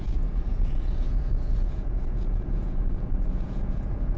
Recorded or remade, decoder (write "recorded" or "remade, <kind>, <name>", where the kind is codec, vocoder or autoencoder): remade, vocoder, Vocos